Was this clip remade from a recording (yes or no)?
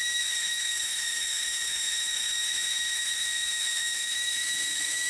yes